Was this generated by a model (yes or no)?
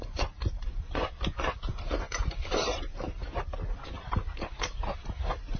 yes